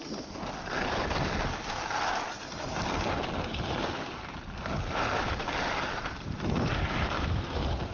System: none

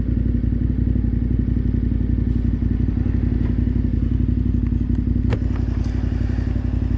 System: none